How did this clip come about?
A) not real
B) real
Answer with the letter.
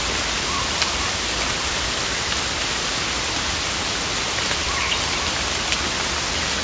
B